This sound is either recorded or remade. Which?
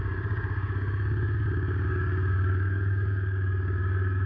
remade